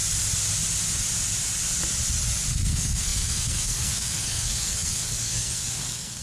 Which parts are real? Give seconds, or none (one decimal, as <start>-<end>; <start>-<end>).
0.0-2.5